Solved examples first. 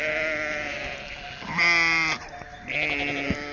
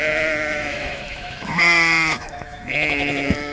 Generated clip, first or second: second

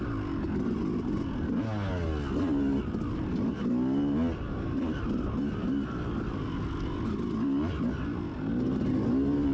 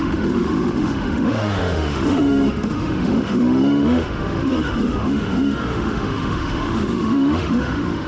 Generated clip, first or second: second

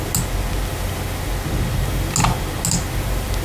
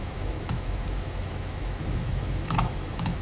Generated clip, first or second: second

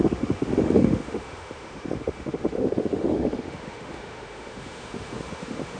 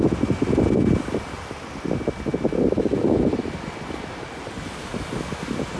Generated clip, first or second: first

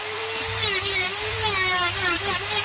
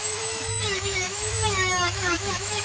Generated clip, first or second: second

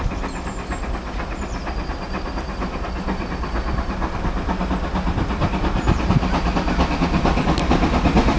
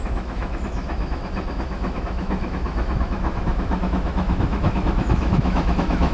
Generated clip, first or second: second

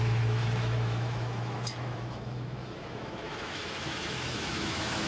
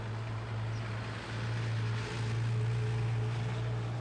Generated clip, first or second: first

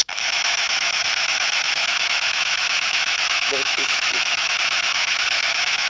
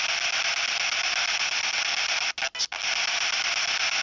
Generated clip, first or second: first